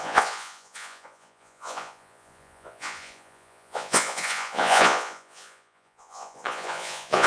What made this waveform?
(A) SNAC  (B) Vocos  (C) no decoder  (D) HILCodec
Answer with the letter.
B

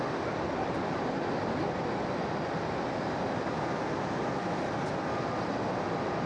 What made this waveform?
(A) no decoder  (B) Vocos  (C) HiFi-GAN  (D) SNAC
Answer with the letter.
A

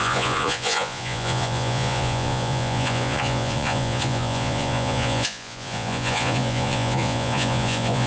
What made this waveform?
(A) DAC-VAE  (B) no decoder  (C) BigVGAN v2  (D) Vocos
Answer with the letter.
D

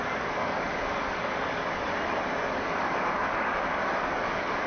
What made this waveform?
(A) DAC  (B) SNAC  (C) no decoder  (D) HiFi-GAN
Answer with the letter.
A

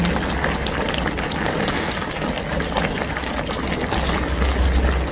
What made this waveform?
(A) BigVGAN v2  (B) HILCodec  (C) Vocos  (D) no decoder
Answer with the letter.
D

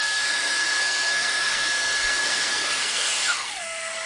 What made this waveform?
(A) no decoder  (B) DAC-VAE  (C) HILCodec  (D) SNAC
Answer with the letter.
D